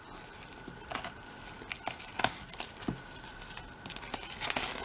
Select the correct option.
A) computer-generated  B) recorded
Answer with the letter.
B